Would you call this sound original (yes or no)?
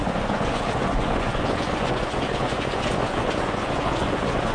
no